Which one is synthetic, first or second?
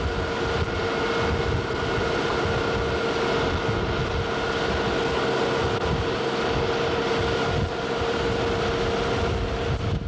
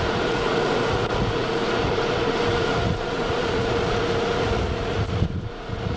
second